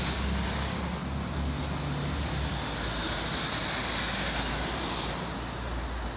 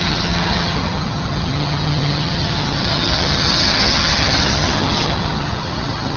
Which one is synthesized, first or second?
second